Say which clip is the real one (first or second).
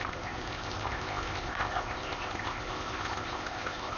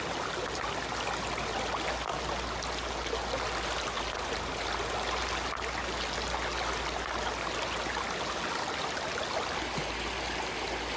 second